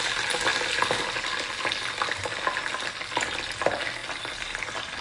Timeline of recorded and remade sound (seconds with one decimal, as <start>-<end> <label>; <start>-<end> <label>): 0.0-5.0 recorded